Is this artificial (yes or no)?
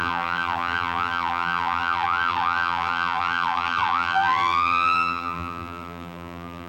yes